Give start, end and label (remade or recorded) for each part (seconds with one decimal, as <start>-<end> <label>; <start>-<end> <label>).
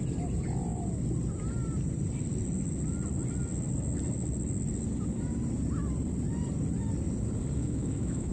0.0-7.6 recorded; 7.6-8.3 remade